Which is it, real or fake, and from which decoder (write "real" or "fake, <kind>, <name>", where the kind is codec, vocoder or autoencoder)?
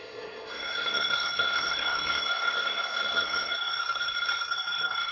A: fake, codec, SNAC